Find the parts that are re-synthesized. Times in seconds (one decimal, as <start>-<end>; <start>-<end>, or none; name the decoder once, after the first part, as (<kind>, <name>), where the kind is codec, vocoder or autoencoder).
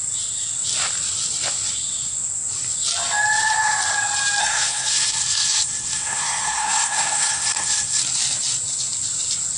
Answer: 4.4-8.0 (codec, SNAC)